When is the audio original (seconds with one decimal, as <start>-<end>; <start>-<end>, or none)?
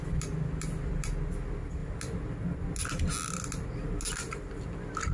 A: 0.0-5.1